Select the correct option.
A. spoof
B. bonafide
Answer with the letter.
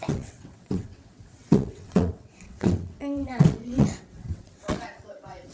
A